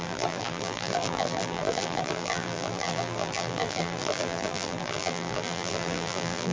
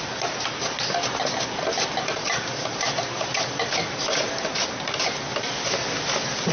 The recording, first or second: second